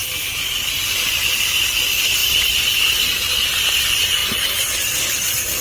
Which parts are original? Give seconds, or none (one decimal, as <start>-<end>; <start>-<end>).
2.2-2.8; 4.2-5.6